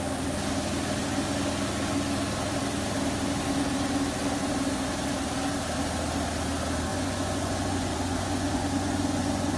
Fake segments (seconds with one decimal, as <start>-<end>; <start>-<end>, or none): 6.9-9.6